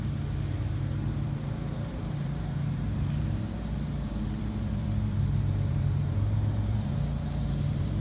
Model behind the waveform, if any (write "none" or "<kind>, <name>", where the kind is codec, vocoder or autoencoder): vocoder, BigVGAN v2